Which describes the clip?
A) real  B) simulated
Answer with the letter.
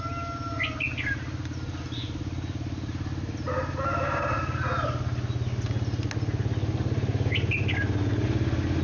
A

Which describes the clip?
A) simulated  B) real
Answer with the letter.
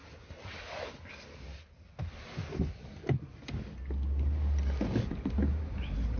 B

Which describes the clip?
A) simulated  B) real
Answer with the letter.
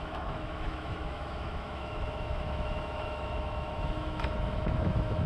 A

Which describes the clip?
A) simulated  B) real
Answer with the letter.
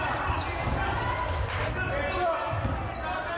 B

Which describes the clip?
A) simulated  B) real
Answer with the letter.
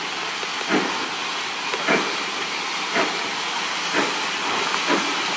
B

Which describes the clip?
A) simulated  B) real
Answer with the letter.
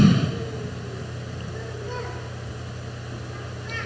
B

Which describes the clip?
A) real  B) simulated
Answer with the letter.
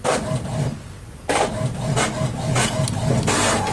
A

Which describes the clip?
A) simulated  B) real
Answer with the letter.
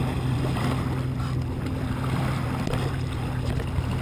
A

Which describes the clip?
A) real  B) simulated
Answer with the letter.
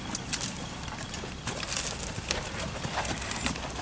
A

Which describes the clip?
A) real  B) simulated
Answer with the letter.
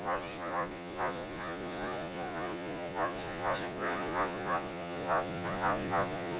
B